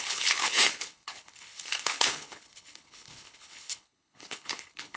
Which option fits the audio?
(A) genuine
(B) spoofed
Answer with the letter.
B